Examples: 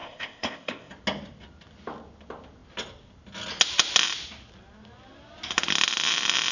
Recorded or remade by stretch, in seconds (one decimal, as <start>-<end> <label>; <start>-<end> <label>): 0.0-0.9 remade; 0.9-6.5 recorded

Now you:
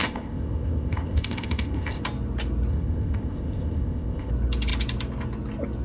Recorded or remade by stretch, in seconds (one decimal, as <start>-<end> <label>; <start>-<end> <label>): 0.0-2.0 remade; 2.0-2.7 recorded; 2.7-4.3 remade; 4.3-5.8 recorded

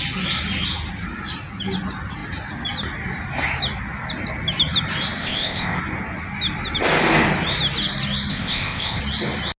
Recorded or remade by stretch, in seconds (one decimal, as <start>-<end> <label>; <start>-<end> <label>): 0.0-5.2 recorded; 5.2-5.8 remade; 5.8-8.3 recorded; 8.3-9.0 remade; 9.0-9.6 recorded

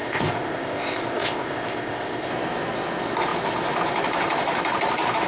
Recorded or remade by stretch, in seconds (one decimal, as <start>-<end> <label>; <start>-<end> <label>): 0.0-2.3 remade; 2.3-5.3 recorded

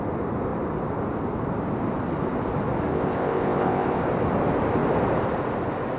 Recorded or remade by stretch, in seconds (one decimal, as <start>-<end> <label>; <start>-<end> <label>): 0.0-2.9 recorded; 2.9-4.0 remade; 4.0-6.0 recorded

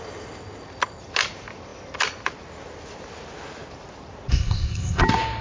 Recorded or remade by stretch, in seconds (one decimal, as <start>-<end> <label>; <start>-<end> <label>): 0.0-4.3 recorded; 4.3-5.0 remade; 5.0-5.4 recorded

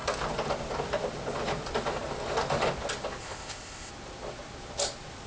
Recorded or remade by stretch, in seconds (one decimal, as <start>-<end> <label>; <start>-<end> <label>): 0.0-3.2 recorded; 3.2-3.9 remade; 3.9-5.3 recorded